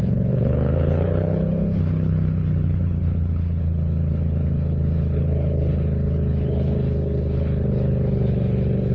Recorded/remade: remade